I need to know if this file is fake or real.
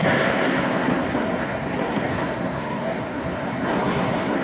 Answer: fake